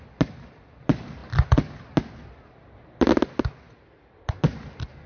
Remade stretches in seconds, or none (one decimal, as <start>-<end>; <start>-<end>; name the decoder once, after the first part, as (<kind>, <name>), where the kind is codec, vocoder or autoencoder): none